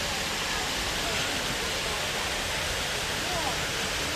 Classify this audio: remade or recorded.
recorded